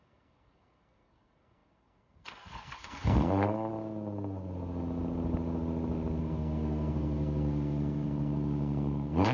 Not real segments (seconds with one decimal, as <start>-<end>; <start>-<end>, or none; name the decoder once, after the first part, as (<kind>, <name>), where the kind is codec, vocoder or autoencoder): 0.0-3.7 (codec, SNAC); 6.2-9.3